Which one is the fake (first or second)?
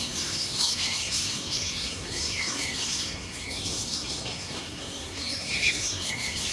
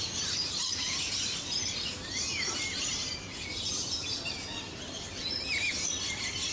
first